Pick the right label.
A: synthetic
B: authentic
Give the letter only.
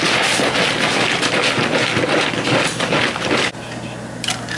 B